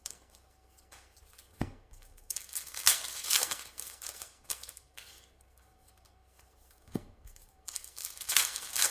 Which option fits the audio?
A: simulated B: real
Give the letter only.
A